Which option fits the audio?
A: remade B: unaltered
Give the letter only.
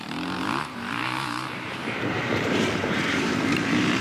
A